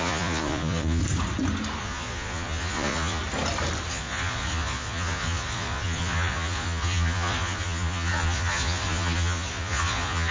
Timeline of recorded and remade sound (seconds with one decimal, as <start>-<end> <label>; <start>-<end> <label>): 0.0-1.0 remade; 1.0-1.8 recorded; 1.8-3.2 remade; 3.2-3.9 recorded; 3.9-10.3 remade